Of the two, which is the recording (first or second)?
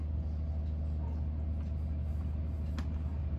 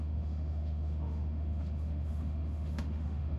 first